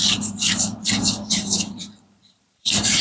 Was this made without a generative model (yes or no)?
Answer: no